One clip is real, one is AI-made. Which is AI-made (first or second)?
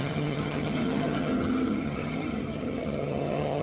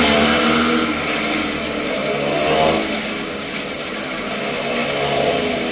first